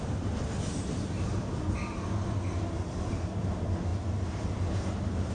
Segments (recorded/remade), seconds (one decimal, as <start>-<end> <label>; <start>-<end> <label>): 0.0-5.3 recorded